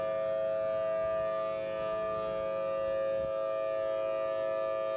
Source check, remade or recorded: recorded